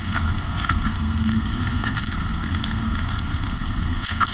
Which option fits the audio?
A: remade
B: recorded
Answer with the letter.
A